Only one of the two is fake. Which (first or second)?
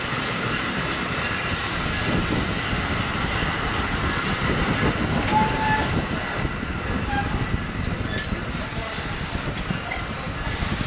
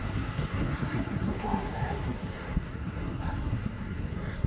second